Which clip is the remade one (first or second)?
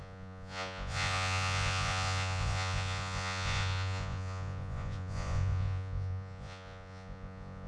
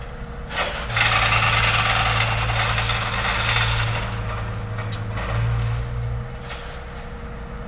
first